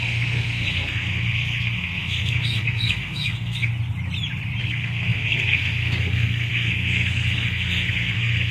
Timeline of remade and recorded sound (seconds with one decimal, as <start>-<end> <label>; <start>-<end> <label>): 0.0-3.7 remade; 3.7-4.6 recorded; 4.6-8.5 remade